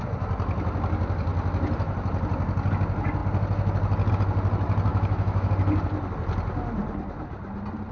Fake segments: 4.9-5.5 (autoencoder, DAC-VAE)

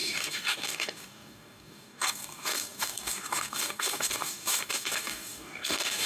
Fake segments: 0.0-6.1 (codec, DAC)

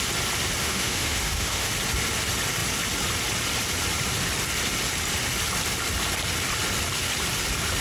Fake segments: 0.6-1.7 (autoencoder, DAC-VAE)

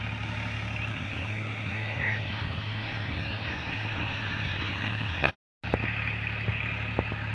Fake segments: 0.9-5.3 (codec, SNAC)

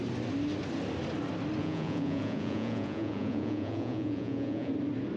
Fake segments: 1.6-4.7 (vocoder, Vocos)

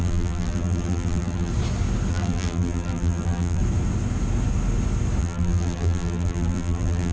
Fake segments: 0.0-1.5 (vocoder, BigVGAN v2); 2.1-3.6; 5.2-7.1

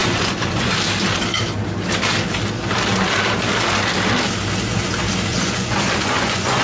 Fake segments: 0.0-0.7 (vocoder, Vocos); 5.3-6.6